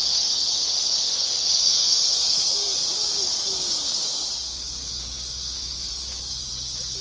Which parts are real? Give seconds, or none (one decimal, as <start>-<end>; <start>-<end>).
none